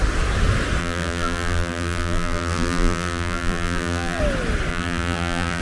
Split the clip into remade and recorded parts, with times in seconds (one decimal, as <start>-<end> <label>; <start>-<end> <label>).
0.0-0.8 recorded; 0.8-4.2 remade; 4.2-4.7 recorded; 4.7-5.6 remade